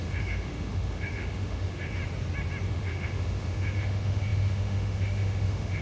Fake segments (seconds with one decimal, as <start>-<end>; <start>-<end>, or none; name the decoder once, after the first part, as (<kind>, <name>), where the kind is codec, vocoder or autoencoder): 0.0-2.0 (autoencoder, DAC-VAE); 2.7-5.8